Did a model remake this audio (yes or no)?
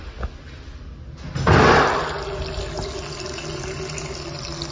no